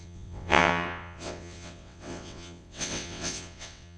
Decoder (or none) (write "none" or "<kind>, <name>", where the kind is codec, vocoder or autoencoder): vocoder, WaveNeXt